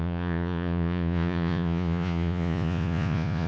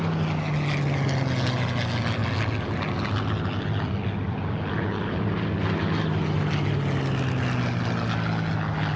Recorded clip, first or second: second